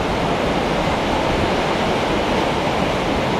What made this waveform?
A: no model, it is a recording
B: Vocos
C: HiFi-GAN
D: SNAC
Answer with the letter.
A